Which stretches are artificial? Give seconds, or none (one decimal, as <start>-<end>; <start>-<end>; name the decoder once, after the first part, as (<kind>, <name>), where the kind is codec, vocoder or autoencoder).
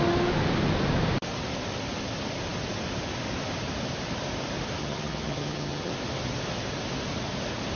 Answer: 4.8-5.9 (vocoder, HiFi-GAN)